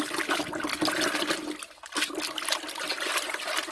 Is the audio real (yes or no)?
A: yes